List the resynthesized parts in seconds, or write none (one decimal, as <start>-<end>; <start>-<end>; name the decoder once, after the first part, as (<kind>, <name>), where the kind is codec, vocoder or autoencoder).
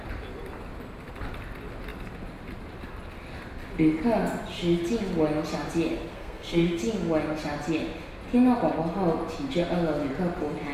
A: 6.1-6.8 (codec, SNAC)